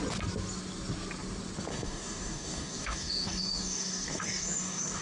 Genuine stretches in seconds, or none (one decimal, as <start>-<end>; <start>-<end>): 0.0-1.7